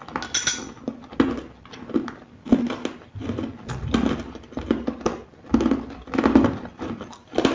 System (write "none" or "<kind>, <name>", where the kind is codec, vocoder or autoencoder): none